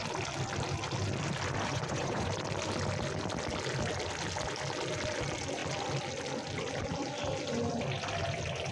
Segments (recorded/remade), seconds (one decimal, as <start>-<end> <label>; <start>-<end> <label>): 0.0-1.7 recorded; 1.7-2.3 remade; 2.3-8.7 recorded